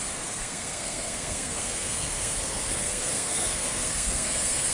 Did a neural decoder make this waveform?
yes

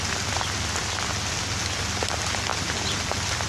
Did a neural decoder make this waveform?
no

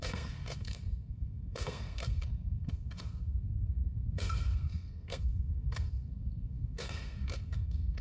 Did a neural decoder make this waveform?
yes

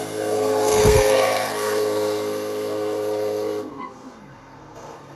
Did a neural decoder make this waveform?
yes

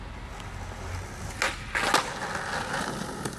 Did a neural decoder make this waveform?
no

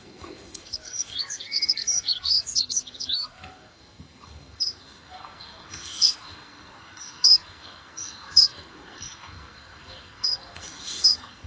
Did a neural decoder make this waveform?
yes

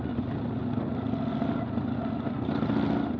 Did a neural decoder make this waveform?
no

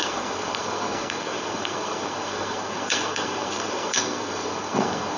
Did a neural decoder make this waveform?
yes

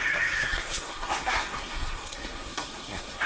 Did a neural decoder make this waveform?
yes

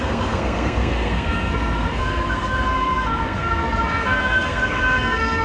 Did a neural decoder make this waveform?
yes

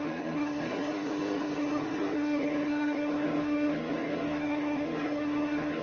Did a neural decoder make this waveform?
yes